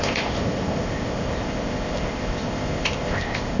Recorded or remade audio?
remade